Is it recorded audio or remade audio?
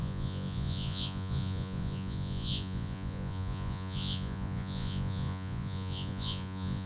remade